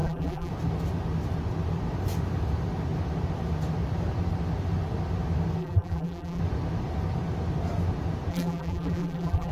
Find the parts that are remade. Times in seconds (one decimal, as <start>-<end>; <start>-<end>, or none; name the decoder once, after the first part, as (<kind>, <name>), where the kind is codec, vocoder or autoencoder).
0.0-0.5 (vocoder, BigVGAN v2); 5.6-6.4; 8.3-9.5